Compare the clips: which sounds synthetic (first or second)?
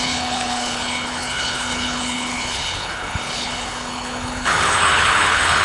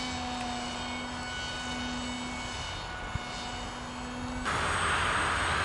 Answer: first